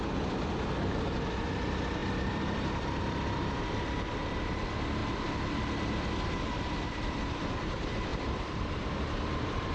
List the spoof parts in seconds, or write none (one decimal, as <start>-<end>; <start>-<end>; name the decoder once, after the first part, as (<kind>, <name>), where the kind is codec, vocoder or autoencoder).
2.0-3.0 (vocoder, BigVGAN v2); 8.1-9.7